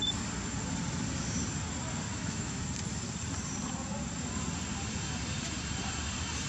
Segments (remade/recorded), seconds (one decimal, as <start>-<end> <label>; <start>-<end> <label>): 0.0-2.1 recorded; 2.1-2.6 remade; 2.6-6.5 recorded